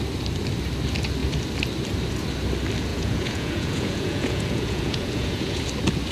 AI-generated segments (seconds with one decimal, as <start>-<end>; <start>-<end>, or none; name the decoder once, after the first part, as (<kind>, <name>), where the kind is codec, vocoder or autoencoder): 2.9-5.6 (vocoder, Vocos)